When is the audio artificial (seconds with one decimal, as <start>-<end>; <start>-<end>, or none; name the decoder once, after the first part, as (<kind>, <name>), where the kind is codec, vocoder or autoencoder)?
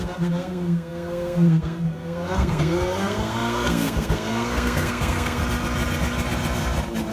0.0-5.4 (codec, SNAC)